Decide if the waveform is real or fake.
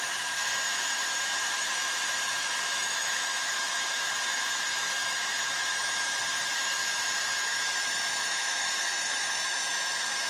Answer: fake